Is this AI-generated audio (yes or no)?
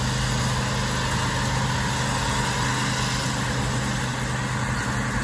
no